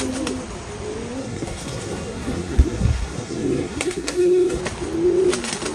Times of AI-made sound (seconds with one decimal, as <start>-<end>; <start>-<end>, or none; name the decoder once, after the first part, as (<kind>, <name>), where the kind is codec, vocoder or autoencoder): 1.2-4.6 (codec, SNAC)